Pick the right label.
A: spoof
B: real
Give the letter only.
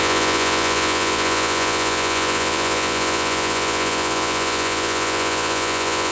A